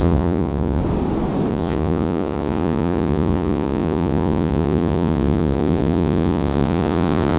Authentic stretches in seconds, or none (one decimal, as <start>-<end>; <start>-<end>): 0.8-1.5